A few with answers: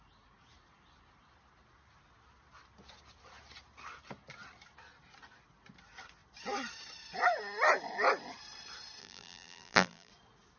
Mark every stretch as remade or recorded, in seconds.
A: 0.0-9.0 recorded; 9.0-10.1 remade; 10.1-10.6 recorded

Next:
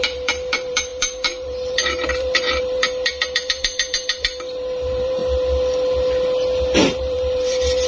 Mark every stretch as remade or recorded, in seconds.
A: 0.0-5.2 remade; 5.2-6.8 recorded; 6.8-7.9 remade

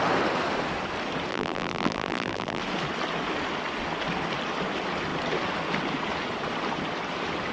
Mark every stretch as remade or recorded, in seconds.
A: 0.0-1.3 recorded; 1.3-2.6 remade; 2.6-7.5 recorded

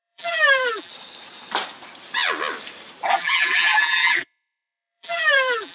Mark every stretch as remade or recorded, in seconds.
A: 0.0-0.9 remade; 0.9-3.1 recorded; 3.1-5.7 remade